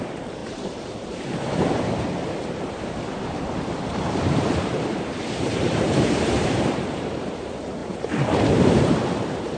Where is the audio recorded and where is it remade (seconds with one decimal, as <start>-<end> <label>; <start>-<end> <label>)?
0.0-9.6 remade